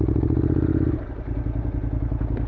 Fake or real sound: real